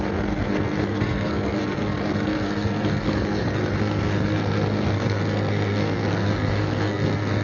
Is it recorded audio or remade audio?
remade